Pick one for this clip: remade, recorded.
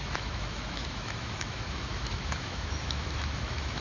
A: remade